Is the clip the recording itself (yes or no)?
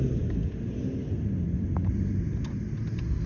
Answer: yes